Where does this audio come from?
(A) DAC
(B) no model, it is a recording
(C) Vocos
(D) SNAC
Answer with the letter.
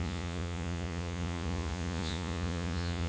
C